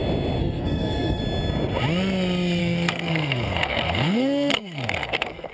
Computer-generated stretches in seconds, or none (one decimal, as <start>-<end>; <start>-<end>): 0.4-1.2; 2.6-5.5